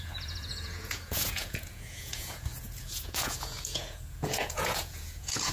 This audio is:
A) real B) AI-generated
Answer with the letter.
B